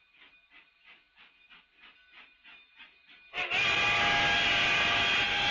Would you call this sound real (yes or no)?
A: yes